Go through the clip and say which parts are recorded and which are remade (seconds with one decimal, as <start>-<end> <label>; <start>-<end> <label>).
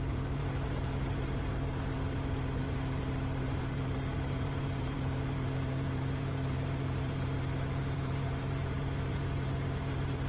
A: 0.0-10.3 remade